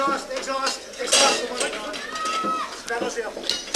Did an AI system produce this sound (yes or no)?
no